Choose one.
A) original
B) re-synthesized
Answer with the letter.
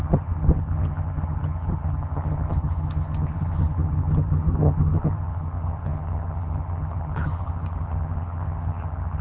B